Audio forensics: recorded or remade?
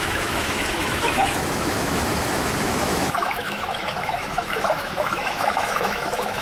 remade